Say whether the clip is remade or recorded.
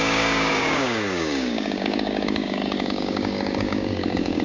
remade